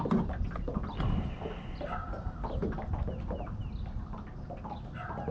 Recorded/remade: recorded